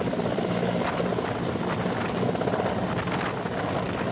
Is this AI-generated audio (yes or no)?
no